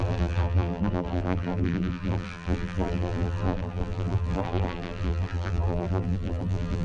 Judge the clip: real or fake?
fake